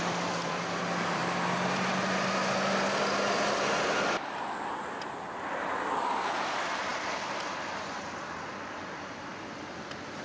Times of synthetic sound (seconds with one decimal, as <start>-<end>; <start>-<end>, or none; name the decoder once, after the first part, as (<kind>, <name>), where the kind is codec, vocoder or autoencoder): 0.0-1.2 (vocoder, BigVGAN v2); 5.6-10.2